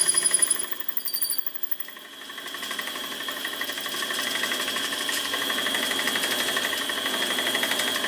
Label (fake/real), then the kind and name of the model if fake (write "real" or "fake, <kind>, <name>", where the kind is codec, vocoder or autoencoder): real